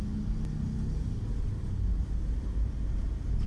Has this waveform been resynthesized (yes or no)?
no